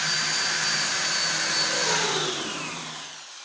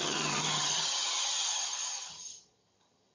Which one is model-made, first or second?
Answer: second